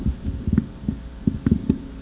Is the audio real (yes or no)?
yes